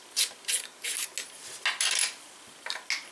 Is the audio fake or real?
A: real